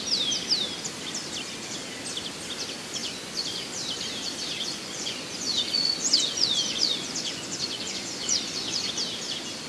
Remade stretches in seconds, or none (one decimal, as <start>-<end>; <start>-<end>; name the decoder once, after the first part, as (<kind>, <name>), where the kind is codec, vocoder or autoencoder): 3.0-3.6 (vocoder, Vocos); 4.6-8.9